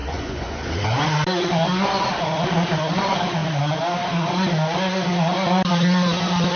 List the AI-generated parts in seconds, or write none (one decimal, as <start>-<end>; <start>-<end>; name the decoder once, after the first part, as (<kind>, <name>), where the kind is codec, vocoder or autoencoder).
0.0-0.7 (vocoder, Vocos)